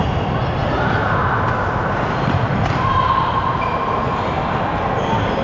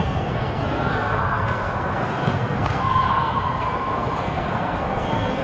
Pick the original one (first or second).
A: first